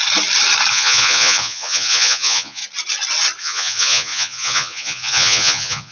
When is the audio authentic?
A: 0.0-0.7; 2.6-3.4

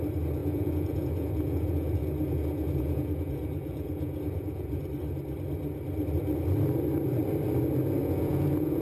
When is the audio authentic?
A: 0.0-0.4; 4.8-8.0

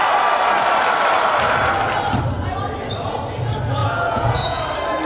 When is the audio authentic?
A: 0.0-3.8; 4.6-5.1

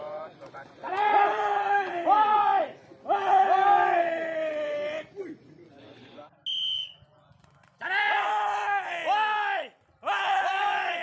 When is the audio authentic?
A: 2.5-5.5; 6.2-6.8; 9.0-10.4

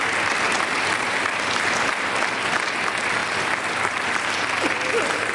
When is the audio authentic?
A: 0.0-5.3